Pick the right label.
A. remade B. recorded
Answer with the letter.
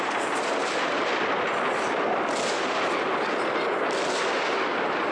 B